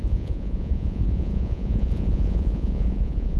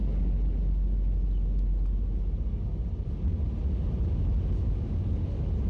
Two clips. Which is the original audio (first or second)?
second